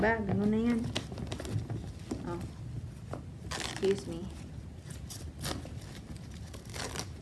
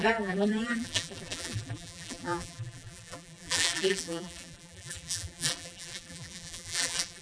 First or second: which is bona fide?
first